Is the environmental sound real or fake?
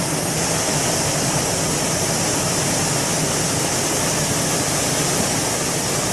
real